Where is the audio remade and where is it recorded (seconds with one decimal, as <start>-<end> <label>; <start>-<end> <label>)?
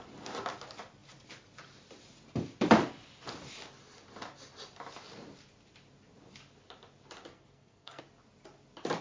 0.0-7.3 recorded; 7.3-8.0 remade; 8.0-9.0 recorded